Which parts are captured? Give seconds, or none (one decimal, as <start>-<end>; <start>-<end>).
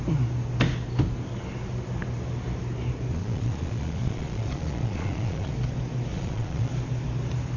0.0-3.1; 5.5-6.1; 6.7-7.6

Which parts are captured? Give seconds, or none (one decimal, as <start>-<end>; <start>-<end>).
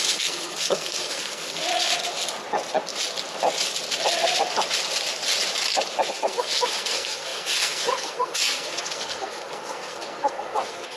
1.7-6.1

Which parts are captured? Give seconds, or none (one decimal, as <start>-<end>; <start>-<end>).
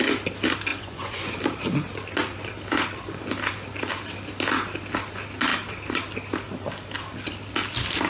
0.0-0.7; 1.3-8.1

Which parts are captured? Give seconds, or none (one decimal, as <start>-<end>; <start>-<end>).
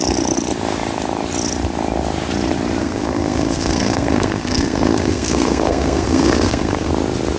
0.0-2.8; 6.9-7.4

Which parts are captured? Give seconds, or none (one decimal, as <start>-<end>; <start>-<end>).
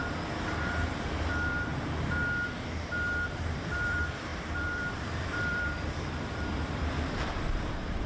1.7-3.3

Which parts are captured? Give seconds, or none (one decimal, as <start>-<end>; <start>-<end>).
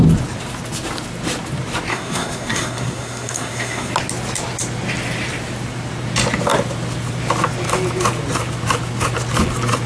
0.0-1.9; 3.9-9.9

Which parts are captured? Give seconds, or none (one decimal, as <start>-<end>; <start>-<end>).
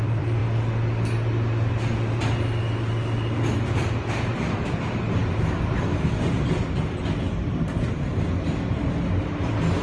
0.4-3.8; 5.2-5.8